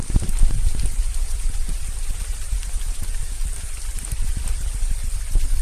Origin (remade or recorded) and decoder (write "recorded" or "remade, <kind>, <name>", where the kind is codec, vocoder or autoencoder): recorded